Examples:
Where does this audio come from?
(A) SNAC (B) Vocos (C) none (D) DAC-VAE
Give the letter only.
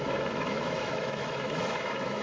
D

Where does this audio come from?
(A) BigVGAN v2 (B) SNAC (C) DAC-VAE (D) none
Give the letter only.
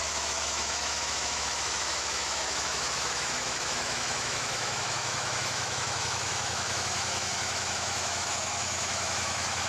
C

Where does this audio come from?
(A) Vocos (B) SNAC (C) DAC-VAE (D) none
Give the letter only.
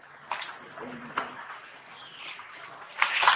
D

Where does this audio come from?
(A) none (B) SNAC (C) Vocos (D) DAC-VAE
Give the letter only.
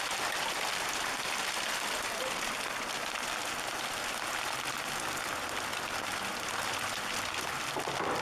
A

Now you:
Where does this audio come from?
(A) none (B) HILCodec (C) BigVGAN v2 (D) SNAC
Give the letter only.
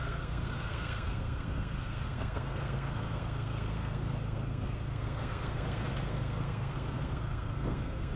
D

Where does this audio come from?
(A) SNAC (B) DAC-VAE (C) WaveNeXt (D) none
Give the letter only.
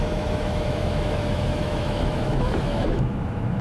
B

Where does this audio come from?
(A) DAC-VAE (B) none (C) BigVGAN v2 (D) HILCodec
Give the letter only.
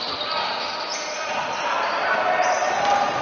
B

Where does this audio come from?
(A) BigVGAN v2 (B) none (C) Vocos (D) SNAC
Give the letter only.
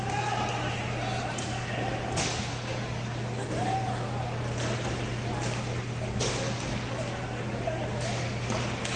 B